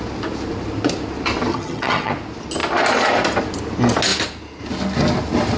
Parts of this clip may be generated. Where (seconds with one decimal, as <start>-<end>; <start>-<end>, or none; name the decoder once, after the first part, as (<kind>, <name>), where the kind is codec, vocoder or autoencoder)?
1.5-2.1 (vocoder, HiFi-GAN)